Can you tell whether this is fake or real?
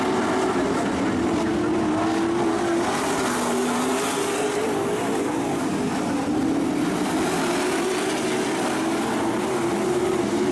real